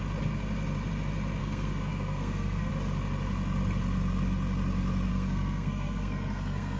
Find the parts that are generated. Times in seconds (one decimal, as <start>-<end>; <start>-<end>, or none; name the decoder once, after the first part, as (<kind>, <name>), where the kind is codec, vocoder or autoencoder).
1.4-2.7 (codec, SNAC); 5.1-6.8